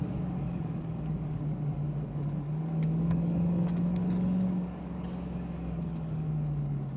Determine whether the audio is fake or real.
fake